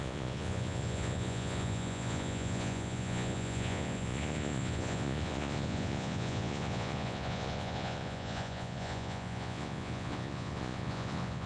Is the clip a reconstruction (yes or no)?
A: yes